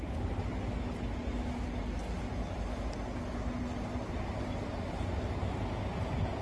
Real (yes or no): yes